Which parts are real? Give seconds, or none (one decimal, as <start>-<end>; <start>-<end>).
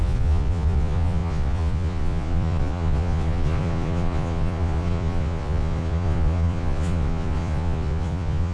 none